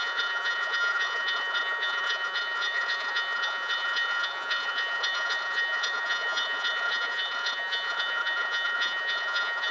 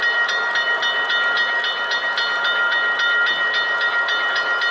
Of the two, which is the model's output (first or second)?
first